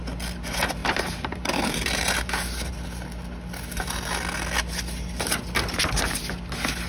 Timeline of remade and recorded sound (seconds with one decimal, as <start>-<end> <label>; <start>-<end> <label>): 0.0-0.8 recorded; 0.8-2.7 remade; 2.7-6.9 recorded